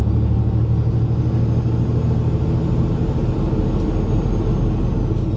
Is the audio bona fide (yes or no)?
yes